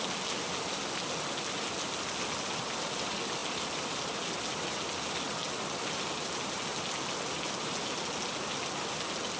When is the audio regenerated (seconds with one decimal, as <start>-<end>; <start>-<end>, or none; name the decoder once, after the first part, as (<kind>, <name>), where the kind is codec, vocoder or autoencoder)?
none